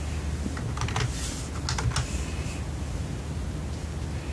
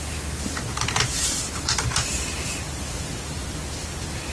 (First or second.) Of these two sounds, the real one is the first